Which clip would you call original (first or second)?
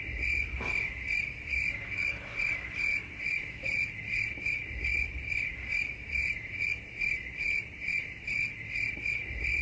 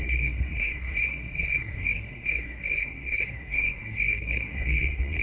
first